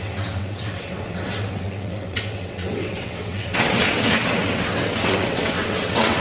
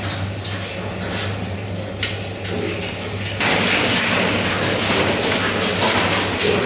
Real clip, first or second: second